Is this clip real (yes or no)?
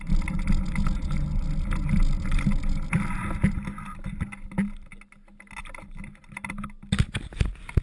yes